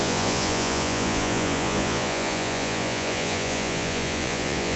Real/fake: fake